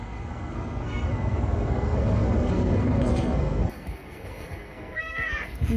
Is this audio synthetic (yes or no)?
yes